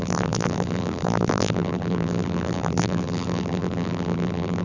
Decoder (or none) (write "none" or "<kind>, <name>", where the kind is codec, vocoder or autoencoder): vocoder, BigVGAN v2